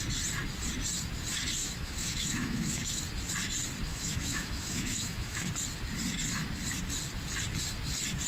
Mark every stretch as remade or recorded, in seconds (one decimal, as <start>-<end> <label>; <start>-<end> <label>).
0.0-1.6 recorded; 1.6-3.0 remade; 3.0-3.9 recorded; 3.9-5.5 remade; 5.5-8.3 recorded